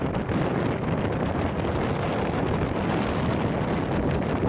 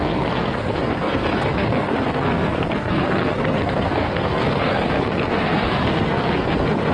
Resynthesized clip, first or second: second